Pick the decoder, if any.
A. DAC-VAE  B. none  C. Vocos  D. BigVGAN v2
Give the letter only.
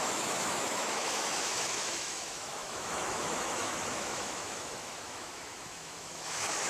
A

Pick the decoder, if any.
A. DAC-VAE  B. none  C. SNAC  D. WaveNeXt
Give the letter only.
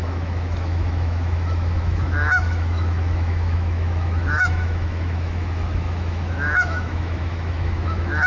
A